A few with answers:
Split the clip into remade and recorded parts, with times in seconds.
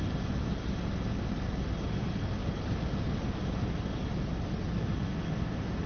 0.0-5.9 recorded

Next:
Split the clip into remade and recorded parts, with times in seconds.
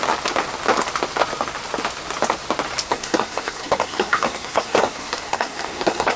0.0-2.9 recorded; 2.9-6.2 remade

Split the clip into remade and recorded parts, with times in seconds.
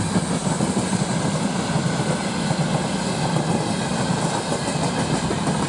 0.0-5.7 recorded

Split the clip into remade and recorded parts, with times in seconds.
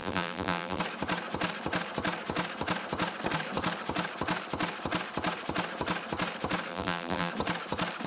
0.0-0.8 remade; 0.8-6.7 recorded; 6.7-7.3 remade; 7.3-8.1 recorded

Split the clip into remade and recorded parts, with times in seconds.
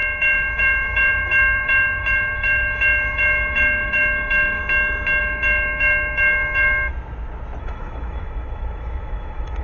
0.0-4.6 remade; 4.6-5.2 recorded; 5.2-6.9 remade; 6.9-7.6 recorded; 7.6-9.6 remade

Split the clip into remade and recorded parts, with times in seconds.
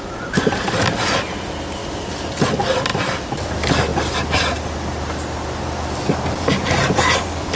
0.0-1.8 recorded; 1.8-2.4 remade; 2.4-2.9 recorded; 2.9-3.5 remade; 3.5-3.9 recorded; 3.9-6.4 remade; 6.4-7.6 recorded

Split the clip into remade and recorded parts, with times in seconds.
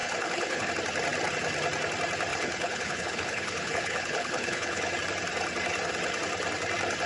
0.0-0.7 remade; 0.7-2.3 recorded; 2.3-4.9 remade; 4.9-7.1 recorded